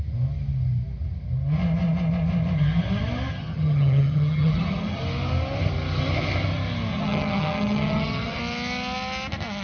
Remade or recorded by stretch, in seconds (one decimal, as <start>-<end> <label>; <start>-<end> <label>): 0.0-3.3 recorded; 3.3-5.0 remade; 5.0-6.9 recorded; 6.9-8.4 remade; 8.4-9.6 recorded